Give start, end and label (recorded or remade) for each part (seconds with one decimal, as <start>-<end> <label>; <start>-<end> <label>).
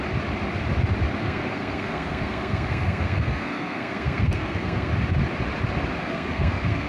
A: 0.0-1.2 recorded; 1.2-4.9 remade; 4.9-6.0 recorded; 6.0-6.9 remade